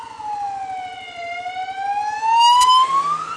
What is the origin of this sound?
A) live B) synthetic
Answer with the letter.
A